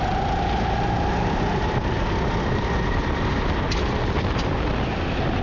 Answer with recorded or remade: recorded